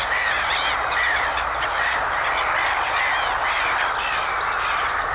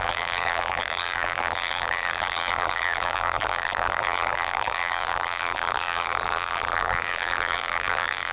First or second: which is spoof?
second